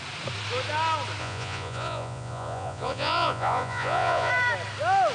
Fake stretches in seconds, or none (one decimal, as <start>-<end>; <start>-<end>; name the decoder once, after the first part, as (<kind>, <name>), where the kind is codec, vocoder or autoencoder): 1.2-4.3 (vocoder, Vocos)